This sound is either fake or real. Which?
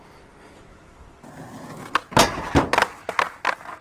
real